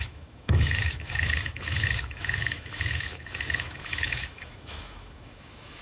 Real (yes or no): no